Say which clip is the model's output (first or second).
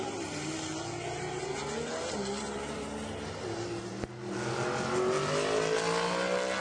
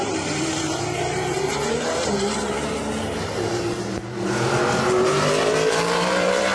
second